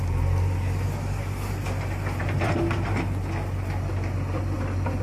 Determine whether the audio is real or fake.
real